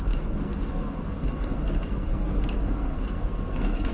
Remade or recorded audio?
remade